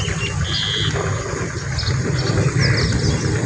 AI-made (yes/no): no